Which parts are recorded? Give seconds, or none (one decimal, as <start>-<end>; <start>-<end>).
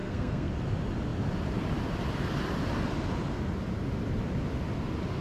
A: 0.5-5.2